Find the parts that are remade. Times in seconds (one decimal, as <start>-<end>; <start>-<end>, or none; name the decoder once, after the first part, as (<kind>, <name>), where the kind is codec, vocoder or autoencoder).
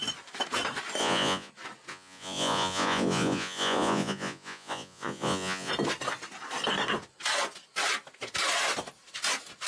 1.0-1.5 (vocoder, Vocos); 1.9-5.7